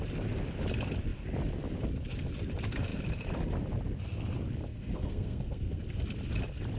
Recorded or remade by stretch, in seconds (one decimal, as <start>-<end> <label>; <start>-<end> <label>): 0.0-4.7 recorded; 4.7-5.8 remade; 5.8-6.8 recorded